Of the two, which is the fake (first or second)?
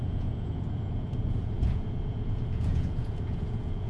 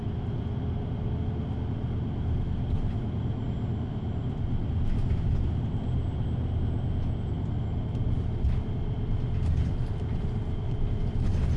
first